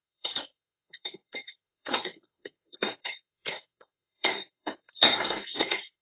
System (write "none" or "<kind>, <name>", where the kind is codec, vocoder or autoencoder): codec, SNAC